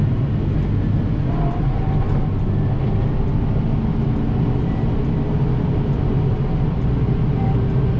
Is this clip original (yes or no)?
yes